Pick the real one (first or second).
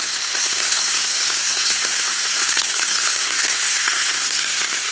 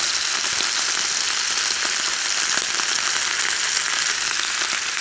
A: second